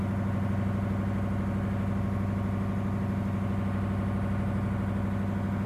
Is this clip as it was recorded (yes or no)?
yes